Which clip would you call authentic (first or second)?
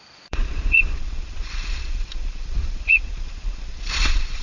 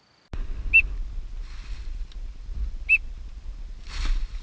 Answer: second